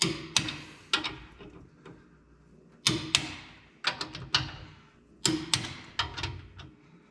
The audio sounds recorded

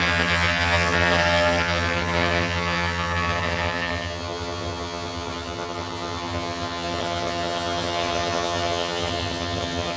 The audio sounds remade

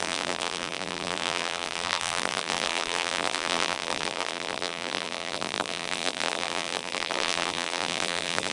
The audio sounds remade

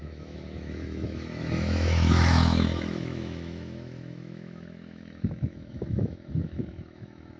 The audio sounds remade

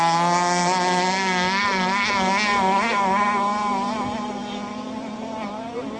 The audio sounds recorded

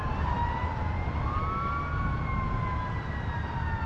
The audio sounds recorded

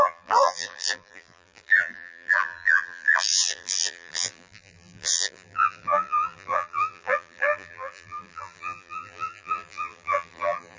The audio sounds remade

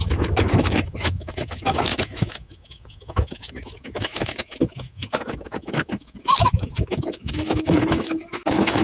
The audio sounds remade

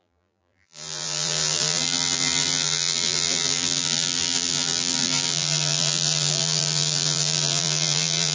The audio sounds remade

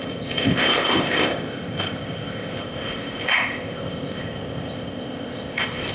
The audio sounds remade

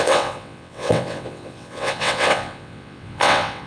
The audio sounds remade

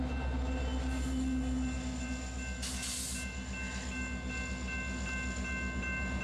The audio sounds recorded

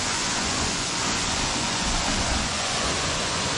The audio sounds remade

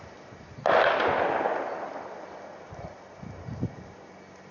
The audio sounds recorded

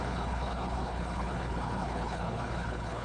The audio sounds remade